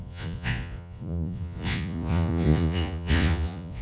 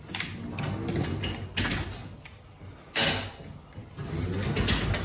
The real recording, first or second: second